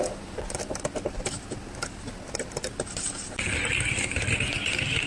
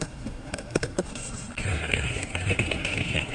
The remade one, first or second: second